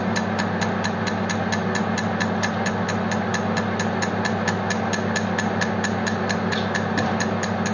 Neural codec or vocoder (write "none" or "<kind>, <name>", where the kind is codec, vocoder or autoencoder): none